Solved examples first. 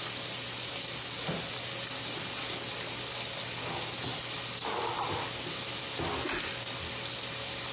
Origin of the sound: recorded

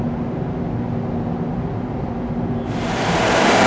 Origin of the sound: recorded